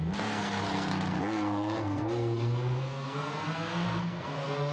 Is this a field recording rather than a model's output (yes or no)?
no